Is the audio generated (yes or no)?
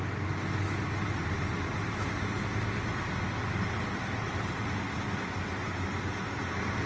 no